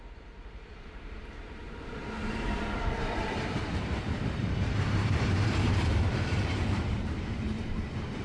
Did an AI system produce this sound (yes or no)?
yes